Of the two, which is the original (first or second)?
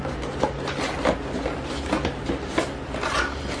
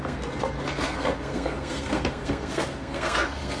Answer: first